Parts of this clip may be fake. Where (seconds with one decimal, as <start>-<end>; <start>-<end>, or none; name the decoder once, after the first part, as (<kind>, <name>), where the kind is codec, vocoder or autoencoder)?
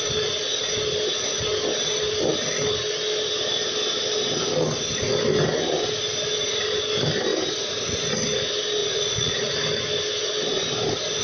8.8-9.5 (vocoder, Vocos)